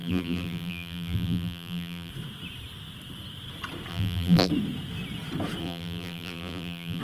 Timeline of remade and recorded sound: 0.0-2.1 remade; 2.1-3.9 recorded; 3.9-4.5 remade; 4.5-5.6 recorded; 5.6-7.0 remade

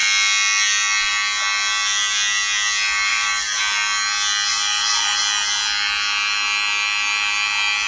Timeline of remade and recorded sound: 0.0-3.1 recorded; 3.1-3.6 remade; 3.6-4.5 recorded; 4.5-5.2 remade; 5.2-7.9 recorded

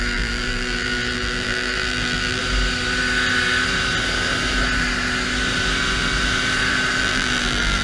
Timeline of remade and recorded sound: 0.0-2.4 remade; 2.4-7.0 recorded; 7.0-7.8 remade

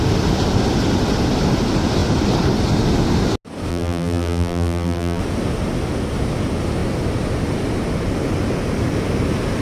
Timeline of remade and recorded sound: 0.0-3.7 recorded; 3.7-5.2 remade; 5.2-9.6 recorded

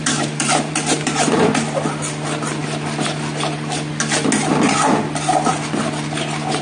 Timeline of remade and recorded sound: 0.0-1.4 remade; 1.4-6.6 recorded